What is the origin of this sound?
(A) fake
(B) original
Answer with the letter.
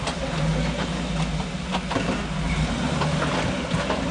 B